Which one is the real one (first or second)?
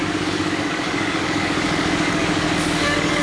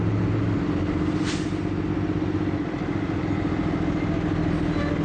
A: second